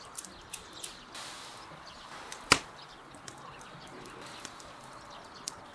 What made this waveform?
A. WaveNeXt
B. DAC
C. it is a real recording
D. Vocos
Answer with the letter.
C